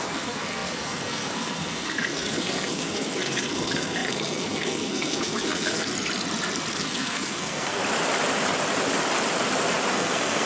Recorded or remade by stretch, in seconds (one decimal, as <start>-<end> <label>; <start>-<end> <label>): 0.0-5.9 remade; 5.9-6.7 recorded; 6.7-7.8 remade; 7.8-9.9 recorded; 9.9-10.5 remade